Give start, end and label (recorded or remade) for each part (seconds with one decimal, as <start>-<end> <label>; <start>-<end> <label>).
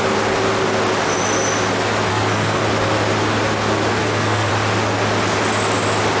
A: 0.0-2.1 recorded; 2.1-2.6 remade; 2.6-4.0 recorded; 4.0-4.5 remade; 4.5-6.2 recorded